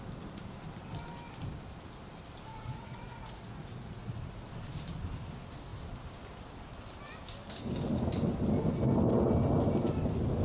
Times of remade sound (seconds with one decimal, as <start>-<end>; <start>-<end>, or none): 2.5-4.5